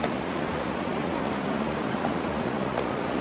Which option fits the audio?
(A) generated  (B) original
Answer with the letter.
A